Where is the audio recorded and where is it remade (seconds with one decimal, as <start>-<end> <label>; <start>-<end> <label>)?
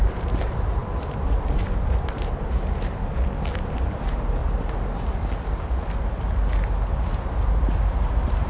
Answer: 0.0-3.0 remade; 3.0-3.7 recorded; 3.7-4.4 remade; 4.4-6.9 recorded; 6.9-8.5 remade